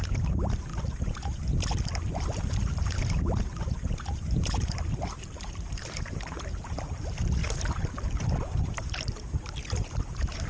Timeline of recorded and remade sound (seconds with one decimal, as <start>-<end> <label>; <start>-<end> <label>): 0.0-0.7 remade; 0.7-2.1 recorded; 2.1-7.4 remade; 7.4-8.2 recorded; 8.2-10.5 remade